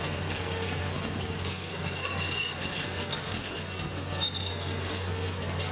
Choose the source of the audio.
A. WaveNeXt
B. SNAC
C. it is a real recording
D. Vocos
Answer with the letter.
B